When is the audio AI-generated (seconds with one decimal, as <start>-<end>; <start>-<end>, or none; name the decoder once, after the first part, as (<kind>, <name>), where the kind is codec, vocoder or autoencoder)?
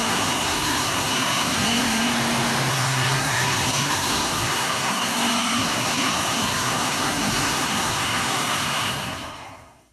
0.0-2.1 (codec, SNAC); 2.7-9.9